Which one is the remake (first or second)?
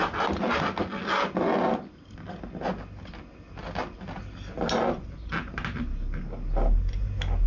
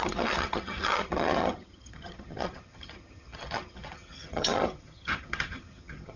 second